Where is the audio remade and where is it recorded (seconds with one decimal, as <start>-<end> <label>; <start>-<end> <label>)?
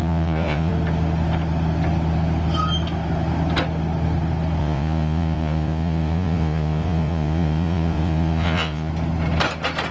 0.0-0.7 remade; 0.7-4.6 recorded; 4.6-8.9 remade; 8.9-9.9 recorded